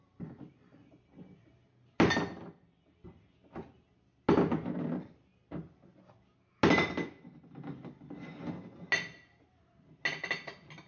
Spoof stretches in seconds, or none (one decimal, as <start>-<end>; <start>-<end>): none